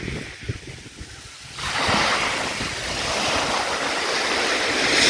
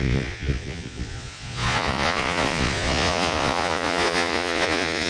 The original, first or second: first